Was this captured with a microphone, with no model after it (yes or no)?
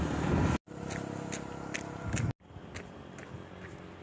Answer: yes